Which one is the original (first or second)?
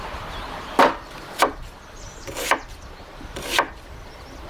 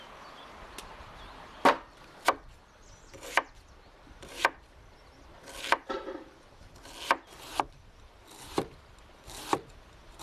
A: second